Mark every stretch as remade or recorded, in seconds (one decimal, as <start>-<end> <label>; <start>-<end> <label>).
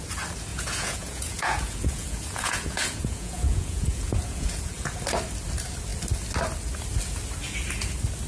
0.0-0.5 recorded; 0.5-5.0 remade; 5.0-8.3 recorded